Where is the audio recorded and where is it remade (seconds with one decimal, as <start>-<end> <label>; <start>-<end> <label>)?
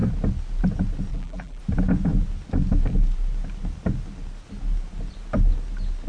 0.0-1.1 recorded; 1.1-1.6 remade; 1.6-6.1 recorded